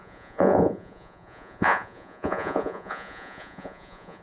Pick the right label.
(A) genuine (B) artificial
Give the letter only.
B